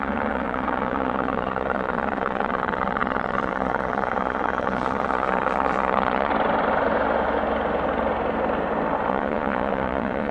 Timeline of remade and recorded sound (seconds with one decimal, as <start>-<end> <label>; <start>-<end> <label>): 0.0-6.3 remade; 6.3-9.1 recorded; 9.1-10.3 remade